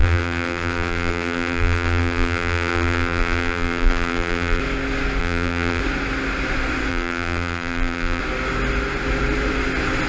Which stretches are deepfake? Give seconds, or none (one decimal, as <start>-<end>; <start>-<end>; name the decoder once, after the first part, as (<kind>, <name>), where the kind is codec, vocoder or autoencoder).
0.0-4.6 (vocoder, BigVGAN v2); 5.2-5.8; 6.9-8.2